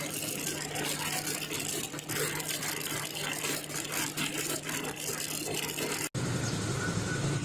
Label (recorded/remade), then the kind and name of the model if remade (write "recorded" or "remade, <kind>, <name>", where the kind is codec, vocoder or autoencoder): recorded